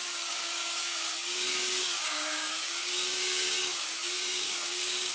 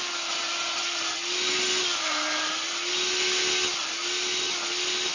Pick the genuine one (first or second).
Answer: second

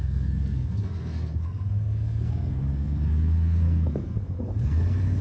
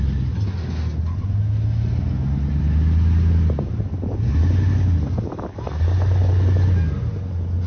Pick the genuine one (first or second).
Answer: second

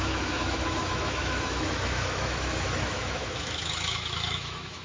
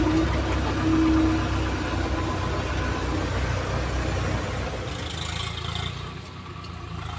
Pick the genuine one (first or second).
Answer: second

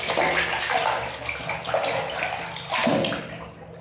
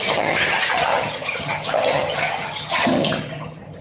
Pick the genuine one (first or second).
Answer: first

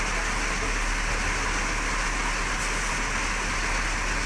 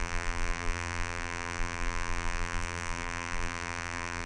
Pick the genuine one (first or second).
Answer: first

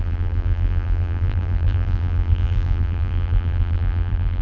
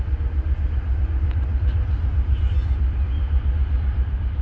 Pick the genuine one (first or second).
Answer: second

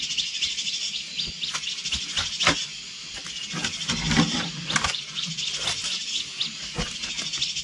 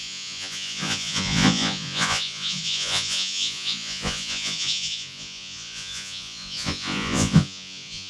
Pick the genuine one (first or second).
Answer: first